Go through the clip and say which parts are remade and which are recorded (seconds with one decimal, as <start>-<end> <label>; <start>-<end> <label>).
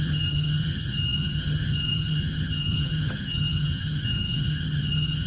0.0-5.3 remade